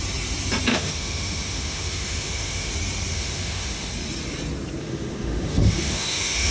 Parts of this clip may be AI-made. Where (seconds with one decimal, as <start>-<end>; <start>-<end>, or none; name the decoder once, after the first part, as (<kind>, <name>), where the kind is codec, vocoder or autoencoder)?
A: 0.7-2.7 (autoencoder, DAC-VAE); 3.1-3.9; 4.8-6.5